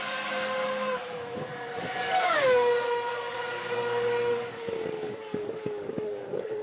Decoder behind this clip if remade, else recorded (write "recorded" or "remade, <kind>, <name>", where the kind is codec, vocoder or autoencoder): remade, codec, DAC